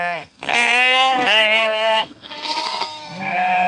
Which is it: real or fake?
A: fake